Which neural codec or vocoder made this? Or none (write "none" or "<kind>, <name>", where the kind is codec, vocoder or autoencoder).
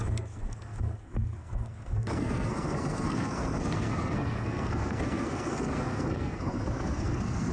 codec, SNAC